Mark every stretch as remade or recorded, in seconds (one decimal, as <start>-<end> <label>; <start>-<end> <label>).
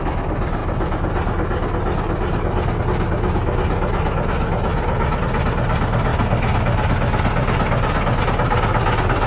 0.0-9.3 recorded